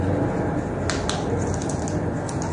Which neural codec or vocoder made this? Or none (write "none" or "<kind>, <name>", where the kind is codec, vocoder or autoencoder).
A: none